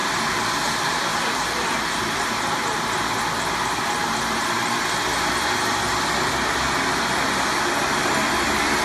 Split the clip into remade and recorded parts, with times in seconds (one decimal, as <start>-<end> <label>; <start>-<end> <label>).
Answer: 0.0-3.2 remade; 3.2-4.0 recorded; 4.0-4.8 remade; 4.8-8.8 recorded